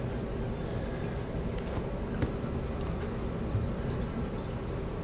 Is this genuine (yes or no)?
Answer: yes